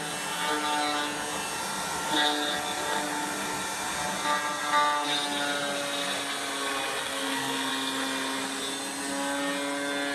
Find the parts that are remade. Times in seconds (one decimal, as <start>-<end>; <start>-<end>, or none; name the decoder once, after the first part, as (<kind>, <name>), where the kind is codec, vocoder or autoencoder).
7.0-7.7 (codec, SNAC)